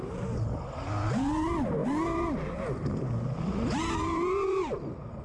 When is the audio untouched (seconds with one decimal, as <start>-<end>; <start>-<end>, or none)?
0.0-5.2